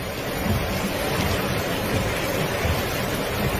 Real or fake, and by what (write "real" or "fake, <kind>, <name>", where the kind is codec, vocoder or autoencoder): real